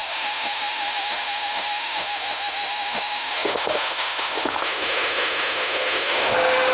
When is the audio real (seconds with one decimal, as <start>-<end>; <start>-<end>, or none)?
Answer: none